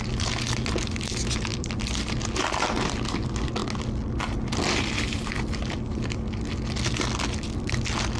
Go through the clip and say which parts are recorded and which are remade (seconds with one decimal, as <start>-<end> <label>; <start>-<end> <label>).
0.0-1.5 recorded; 1.5-2.1 remade; 2.1-8.2 recorded